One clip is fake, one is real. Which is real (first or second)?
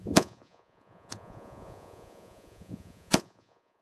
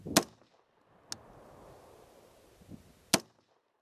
second